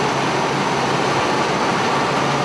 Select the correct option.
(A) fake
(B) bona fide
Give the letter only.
B